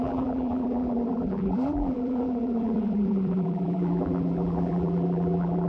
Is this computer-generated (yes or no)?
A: yes